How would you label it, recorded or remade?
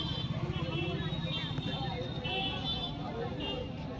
recorded